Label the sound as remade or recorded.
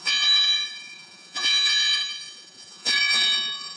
remade